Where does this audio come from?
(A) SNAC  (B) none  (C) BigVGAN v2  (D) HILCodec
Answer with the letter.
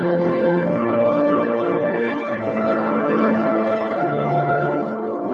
D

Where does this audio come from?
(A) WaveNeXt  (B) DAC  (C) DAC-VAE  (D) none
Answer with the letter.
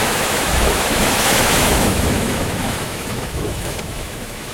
C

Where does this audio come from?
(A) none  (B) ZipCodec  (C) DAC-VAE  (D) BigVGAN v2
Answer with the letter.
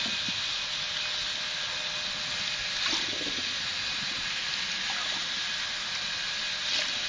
A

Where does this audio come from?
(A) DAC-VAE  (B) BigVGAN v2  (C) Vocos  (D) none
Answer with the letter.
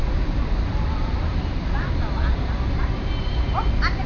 D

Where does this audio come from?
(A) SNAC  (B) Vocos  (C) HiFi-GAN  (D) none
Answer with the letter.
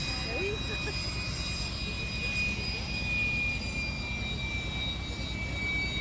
D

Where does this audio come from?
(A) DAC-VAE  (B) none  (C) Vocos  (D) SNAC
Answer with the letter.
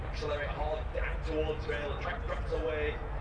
B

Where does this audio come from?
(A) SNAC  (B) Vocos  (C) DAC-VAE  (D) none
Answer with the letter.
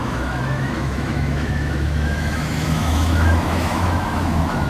C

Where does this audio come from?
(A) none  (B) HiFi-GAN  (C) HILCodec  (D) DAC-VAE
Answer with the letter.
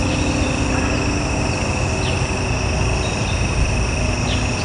A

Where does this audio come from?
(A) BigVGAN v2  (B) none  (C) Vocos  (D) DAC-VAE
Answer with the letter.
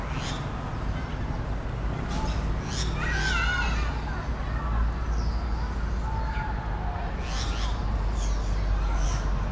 B